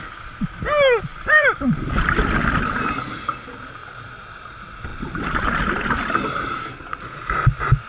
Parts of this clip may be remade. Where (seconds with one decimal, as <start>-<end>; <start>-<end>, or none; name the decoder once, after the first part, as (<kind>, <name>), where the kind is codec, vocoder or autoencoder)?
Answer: 1.1-2.6 (vocoder, BigVGAN v2); 4.9-7.9